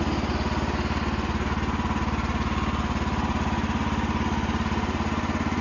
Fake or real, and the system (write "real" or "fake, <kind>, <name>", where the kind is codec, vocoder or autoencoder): real